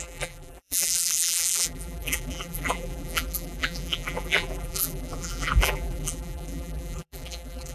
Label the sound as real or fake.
fake